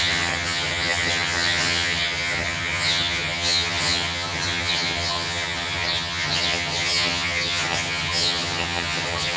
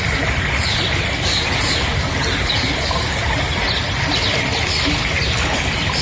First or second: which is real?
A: second